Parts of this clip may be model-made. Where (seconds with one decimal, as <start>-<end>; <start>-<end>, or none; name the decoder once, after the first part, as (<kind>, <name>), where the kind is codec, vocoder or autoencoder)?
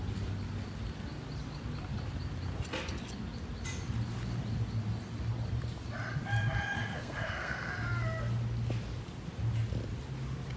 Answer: 6.9-7.7 (codec, SNAC)